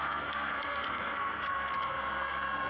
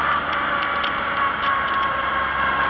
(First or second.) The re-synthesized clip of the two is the first